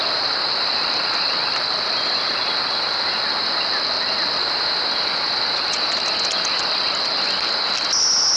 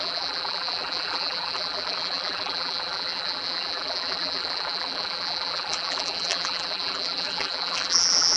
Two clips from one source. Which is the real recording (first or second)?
first